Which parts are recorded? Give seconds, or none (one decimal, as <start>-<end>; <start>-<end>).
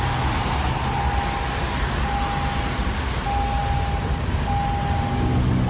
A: 0.0-5.7